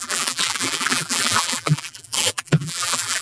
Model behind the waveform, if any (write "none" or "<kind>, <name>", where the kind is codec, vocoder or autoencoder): vocoder, BigVGAN v2